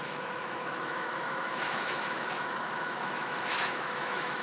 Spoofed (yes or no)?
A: yes